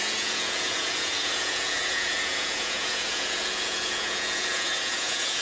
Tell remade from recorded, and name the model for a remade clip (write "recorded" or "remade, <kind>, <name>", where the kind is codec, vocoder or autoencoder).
remade, vocoder, Vocos